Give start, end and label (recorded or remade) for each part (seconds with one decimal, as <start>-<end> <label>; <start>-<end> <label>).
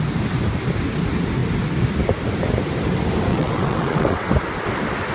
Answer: 0.0-3.3 recorded; 3.3-4.3 remade; 4.3-5.1 recorded